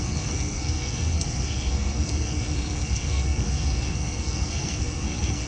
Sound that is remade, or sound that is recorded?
remade